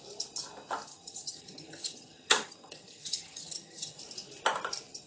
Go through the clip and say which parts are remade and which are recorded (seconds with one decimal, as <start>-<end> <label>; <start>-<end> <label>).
0.0-0.9 recorded; 0.9-4.0 remade; 4.0-5.1 recorded